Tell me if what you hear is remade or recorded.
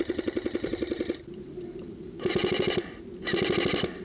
remade